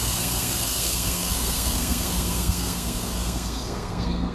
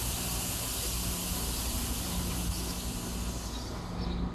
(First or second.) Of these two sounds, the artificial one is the first